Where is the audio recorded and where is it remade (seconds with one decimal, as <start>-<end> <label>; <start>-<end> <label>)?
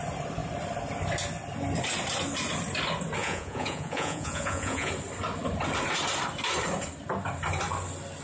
0.0-3.2 recorded; 3.2-4.9 remade; 4.9-8.2 recorded